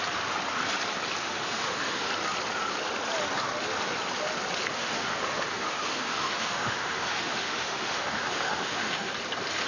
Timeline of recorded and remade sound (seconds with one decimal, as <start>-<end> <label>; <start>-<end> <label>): 0.0-1.2 recorded; 1.2-2.1 remade; 2.1-4.7 recorded; 4.7-9.1 remade; 9.1-9.7 recorded